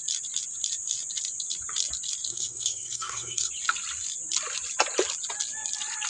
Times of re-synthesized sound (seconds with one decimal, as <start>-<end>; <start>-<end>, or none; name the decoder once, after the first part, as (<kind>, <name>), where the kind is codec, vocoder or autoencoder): 2.3-3.5 (codec, SNAC)